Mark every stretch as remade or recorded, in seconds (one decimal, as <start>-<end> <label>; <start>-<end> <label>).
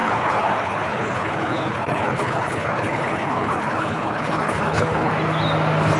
0.0-5.1 remade; 5.1-6.0 recorded